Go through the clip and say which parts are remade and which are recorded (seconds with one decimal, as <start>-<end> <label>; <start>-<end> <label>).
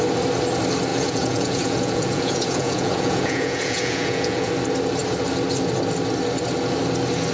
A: 0.0-0.9 recorded; 0.9-4.5 remade; 4.5-7.3 recorded